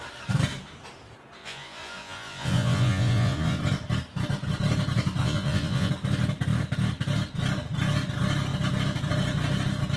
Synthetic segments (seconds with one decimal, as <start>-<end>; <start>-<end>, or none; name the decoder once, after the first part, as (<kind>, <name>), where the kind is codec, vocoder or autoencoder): 1.4-3.6 (vocoder, Vocos); 5.2-5.9